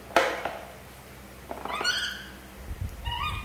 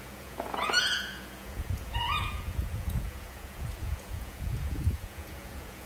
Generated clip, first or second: second